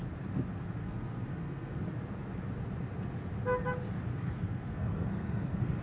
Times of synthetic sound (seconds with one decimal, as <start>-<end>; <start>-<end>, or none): 0.8-1.8; 4.1-5.8